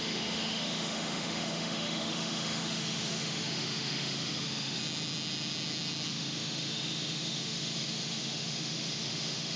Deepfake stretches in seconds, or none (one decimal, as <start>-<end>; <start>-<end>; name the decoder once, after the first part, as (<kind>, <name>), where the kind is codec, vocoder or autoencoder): 0.0-4.8 (autoencoder, DAC-VAE); 6.1-9.6